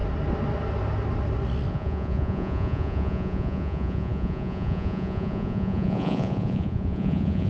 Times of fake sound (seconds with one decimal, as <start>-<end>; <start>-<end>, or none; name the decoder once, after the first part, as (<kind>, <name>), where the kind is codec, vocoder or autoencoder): 1.7-7.5 (vocoder, Vocos)